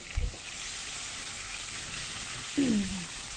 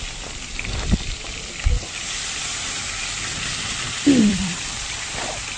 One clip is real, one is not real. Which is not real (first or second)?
second